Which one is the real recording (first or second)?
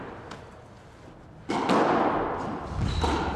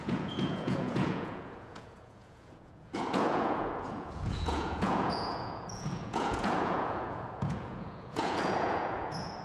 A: first